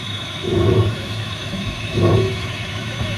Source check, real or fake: fake